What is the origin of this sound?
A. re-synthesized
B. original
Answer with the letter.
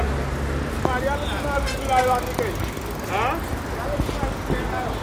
B